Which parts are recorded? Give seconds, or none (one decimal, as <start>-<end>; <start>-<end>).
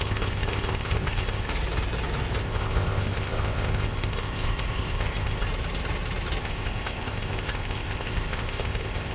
1.5-2.4; 5.5-6.4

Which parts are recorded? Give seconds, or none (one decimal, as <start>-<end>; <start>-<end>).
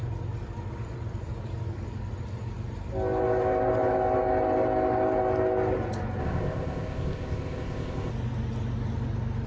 0.0-6.2; 8.1-9.5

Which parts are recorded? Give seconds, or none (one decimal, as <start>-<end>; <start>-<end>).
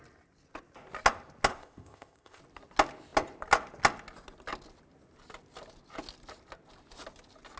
0.0-1.5; 2.4-7.6